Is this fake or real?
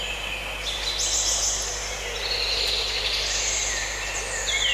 real